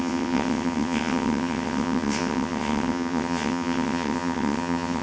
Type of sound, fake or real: fake